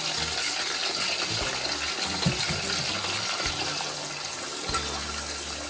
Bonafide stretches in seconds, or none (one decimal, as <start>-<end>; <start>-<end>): 0.0-5.7